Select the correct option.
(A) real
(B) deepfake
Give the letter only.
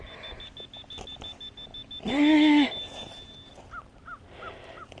A